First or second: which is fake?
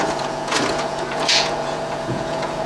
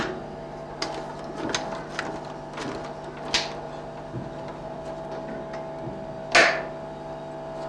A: first